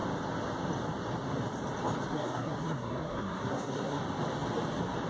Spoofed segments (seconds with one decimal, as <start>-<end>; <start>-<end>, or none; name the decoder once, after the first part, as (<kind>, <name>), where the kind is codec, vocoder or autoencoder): 2.1-4.0 (codec, SNAC)